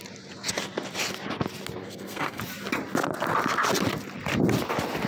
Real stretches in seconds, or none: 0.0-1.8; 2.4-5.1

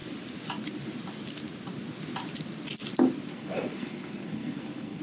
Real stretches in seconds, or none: 0.0-3.3

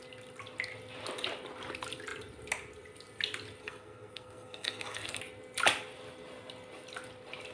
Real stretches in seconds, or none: 0.0-3.6; 5.2-7.5

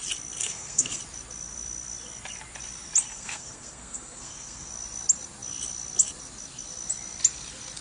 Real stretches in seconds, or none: 0.0-0.4; 1.0-3.1; 4.7-7.8